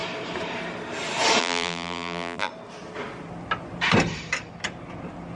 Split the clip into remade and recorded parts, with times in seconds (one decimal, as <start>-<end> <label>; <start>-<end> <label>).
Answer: 0.0-1.4 recorded; 1.4-2.5 remade; 2.5-5.4 recorded